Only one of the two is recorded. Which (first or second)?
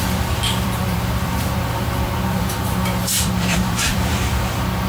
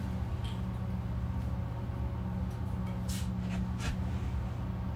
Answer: second